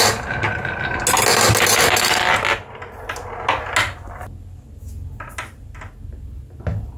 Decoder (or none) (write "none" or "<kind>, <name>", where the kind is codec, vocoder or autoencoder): none